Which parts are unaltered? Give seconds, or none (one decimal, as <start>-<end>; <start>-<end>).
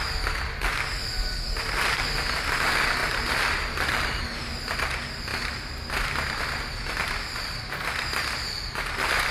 0.0-9.3